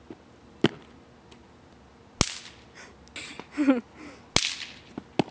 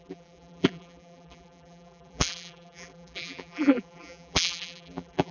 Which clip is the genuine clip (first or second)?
first